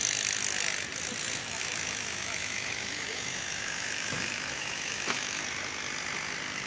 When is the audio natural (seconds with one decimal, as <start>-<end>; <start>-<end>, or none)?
0.0-1.4; 5.4-6.7